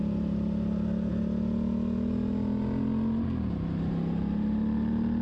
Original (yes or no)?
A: yes